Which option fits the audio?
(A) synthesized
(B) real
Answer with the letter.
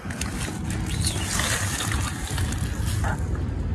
B